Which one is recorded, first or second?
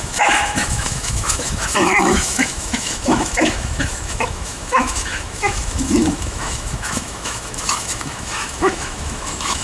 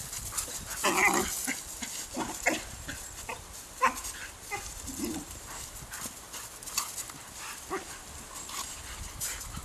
second